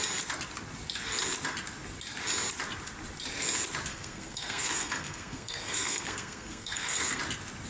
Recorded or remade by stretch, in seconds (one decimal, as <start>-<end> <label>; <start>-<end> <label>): 0.0-3.9 recorded; 3.9-7.2 remade; 7.2-7.7 recorded